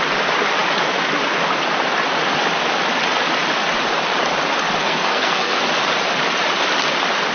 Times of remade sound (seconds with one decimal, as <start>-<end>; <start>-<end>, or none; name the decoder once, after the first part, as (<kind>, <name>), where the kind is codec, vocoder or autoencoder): 4.8-5.6 (codec, SNAC)